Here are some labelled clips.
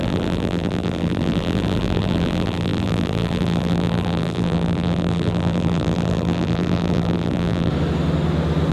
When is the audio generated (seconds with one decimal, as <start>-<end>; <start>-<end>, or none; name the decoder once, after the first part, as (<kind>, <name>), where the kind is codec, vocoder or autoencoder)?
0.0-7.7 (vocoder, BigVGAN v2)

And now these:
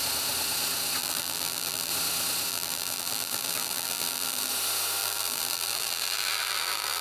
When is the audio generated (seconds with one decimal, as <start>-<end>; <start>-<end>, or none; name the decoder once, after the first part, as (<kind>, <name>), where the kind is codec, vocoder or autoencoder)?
1.0-1.9 (vocoder, BigVGAN v2); 2.5-4.5; 5.0-7.0

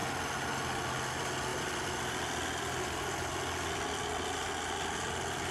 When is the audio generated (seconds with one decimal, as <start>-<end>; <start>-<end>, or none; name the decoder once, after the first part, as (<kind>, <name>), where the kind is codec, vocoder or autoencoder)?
1.5-4.0 (vocoder, BigVGAN v2)